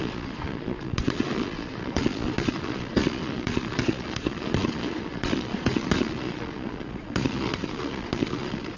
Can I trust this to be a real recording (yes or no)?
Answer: no